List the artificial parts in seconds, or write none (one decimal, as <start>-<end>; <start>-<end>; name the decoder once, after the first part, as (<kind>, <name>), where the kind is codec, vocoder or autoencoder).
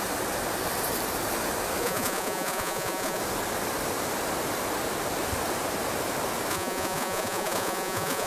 1.8-3.2 (vocoder, Vocos); 6.5-8.3